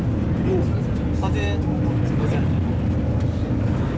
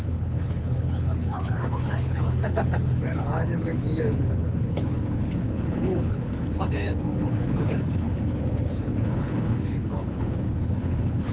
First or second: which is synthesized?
second